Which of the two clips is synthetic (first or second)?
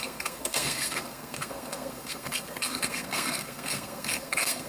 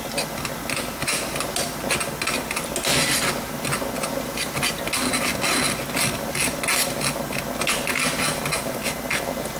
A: first